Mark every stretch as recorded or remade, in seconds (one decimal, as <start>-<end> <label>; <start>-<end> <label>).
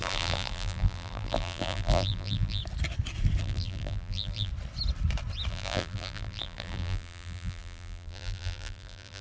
0.0-2.6 remade; 2.6-3.4 recorded; 3.4-4.5 remade; 4.5-5.5 recorded; 5.5-9.2 remade